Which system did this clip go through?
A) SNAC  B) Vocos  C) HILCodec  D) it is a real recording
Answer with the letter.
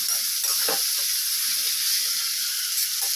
D